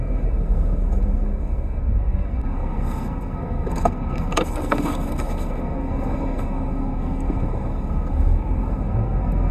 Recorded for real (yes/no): no